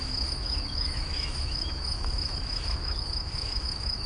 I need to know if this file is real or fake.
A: fake